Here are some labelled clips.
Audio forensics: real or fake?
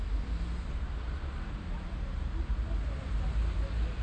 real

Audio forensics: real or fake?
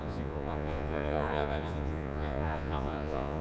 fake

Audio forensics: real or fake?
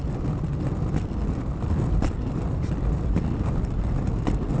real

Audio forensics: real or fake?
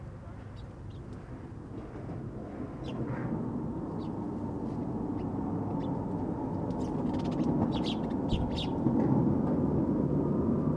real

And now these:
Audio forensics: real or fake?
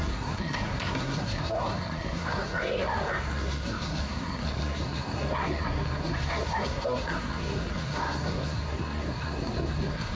fake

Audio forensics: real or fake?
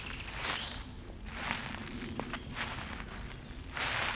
real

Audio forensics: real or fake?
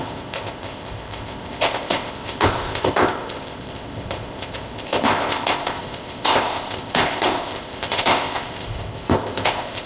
fake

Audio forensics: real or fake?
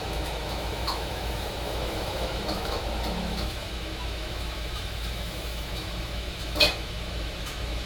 fake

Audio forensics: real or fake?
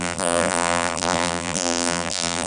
fake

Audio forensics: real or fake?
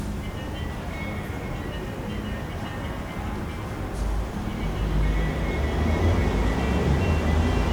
real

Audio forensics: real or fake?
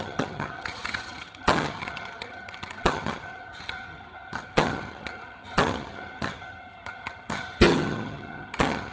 fake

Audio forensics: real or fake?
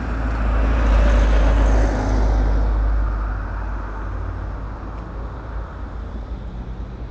real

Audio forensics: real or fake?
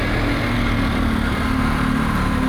real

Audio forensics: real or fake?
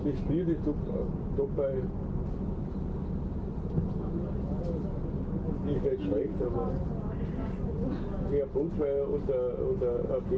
real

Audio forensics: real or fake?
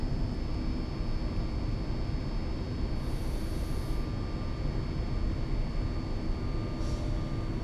real